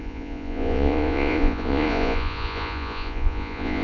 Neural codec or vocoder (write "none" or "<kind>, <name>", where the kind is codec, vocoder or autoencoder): vocoder, Vocos